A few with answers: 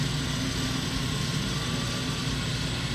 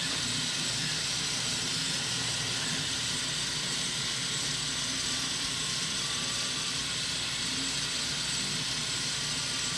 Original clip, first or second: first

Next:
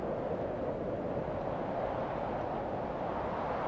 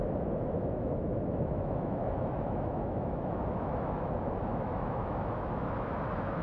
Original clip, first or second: first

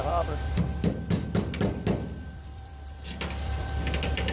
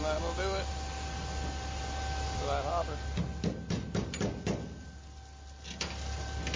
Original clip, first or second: second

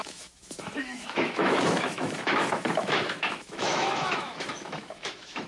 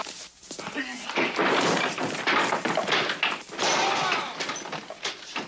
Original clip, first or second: second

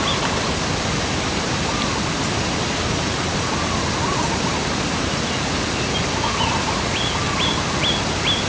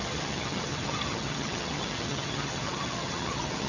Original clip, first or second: first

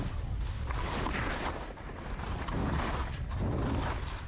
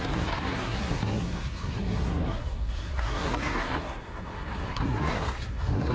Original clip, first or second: first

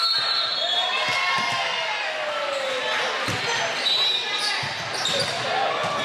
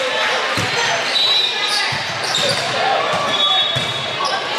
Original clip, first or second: first